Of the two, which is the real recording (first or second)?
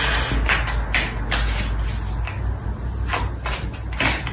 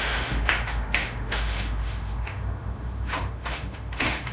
first